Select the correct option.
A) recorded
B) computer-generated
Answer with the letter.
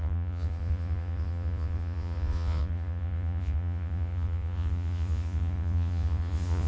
B